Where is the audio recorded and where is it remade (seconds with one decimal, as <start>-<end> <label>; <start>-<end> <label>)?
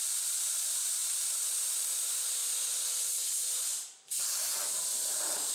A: 0.0-1.0 remade; 1.0-1.8 recorded; 1.8-2.4 remade; 2.4-3.3 recorded; 3.3-5.5 remade